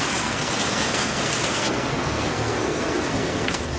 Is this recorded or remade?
remade